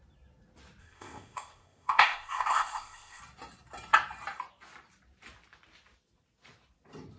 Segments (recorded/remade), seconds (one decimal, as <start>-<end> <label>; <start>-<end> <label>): 0.0-0.8 recorded; 0.8-3.2 remade; 3.2-7.2 recorded